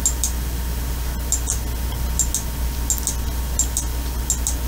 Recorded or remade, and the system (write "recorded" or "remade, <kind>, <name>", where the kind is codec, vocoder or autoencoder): recorded